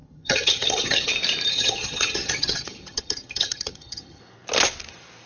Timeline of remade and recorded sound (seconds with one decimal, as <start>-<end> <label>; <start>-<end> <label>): 0.0-1.1 remade; 1.1-1.5 recorded; 1.5-4.2 remade; 4.2-5.3 recorded